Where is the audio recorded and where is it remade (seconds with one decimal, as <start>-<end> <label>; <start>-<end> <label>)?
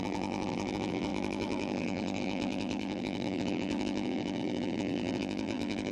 0.0-5.9 remade